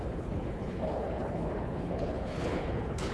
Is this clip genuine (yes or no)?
no